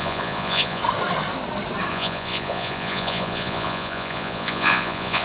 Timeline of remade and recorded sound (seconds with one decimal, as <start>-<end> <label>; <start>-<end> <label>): 0.0-0.8 remade; 0.8-1.9 recorded; 1.9-5.2 remade